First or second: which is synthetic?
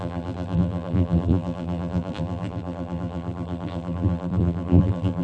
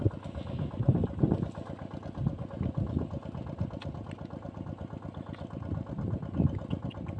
first